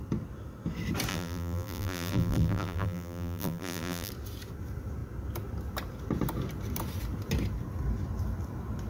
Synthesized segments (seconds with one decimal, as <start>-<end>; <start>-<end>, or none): 1.1-4.1

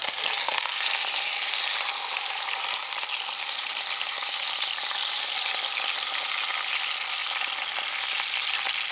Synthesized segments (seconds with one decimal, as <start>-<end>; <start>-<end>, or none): none

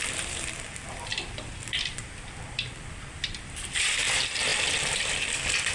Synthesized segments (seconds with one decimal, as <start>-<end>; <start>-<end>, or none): 0.0-5.7

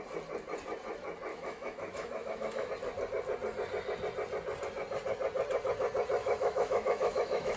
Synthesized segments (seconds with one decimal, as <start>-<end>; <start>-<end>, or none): 1.3-2.7; 6.2-7.6

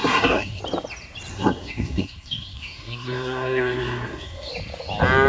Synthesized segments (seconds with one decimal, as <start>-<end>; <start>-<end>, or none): 0.0-0.6; 1.3-4.5